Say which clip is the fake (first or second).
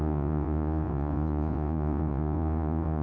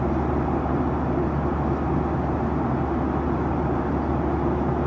first